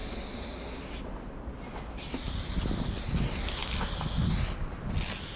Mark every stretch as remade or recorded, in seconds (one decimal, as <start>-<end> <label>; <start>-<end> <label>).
0.0-5.4 recorded